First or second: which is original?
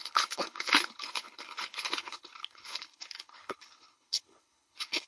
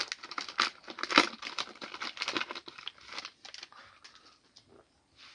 second